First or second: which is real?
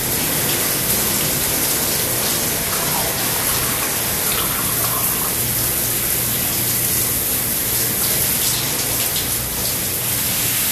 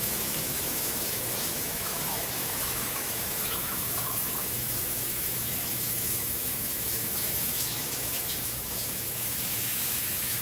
first